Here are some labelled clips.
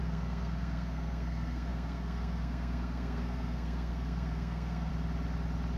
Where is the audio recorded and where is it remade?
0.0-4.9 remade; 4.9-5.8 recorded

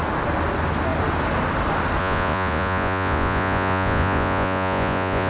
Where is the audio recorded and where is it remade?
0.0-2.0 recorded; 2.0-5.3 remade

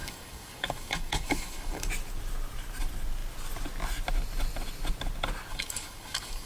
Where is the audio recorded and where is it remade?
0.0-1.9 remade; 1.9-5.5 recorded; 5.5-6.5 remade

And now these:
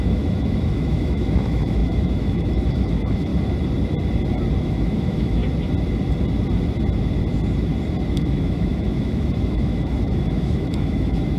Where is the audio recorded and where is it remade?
0.0-3.3 remade; 3.3-4.6 recorded; 4.6-5.4 remade; 5.4-8.1 recorded; 8.1-11.4 remade

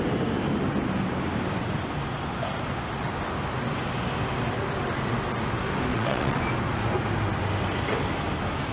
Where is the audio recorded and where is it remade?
0.0-5.9 recorded; 5.9-6.4 remade; 6.4-8.7 recorded

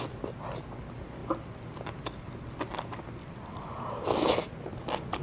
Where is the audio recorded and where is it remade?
0.0-5.2 recorded

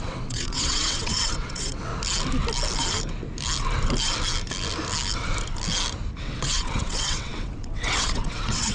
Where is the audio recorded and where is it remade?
0.0-1.9 remade; 1.9-6.2 recorded; 6.2-8.7 remade

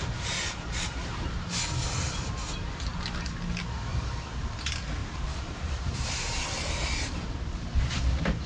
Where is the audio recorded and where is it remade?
0.0-5.0 recorded; 5.0-7.3 remade; 7.3-8.5 recorded